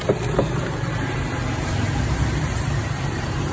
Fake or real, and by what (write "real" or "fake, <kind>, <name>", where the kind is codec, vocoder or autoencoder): fake, vocoder, BigVGAN v2